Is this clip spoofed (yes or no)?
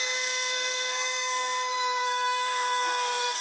yes